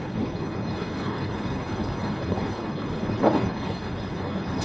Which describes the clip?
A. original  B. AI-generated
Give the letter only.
B